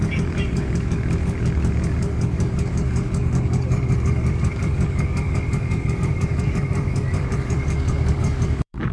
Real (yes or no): no